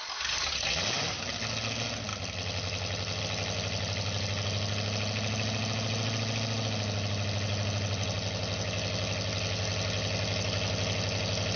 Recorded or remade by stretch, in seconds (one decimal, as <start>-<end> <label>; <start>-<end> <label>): 0.0-11.6 recorded